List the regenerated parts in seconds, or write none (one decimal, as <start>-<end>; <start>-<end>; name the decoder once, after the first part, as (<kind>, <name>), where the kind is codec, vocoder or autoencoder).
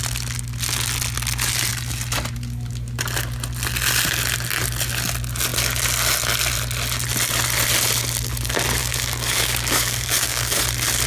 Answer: 8.8-10.6 (codec, DAC)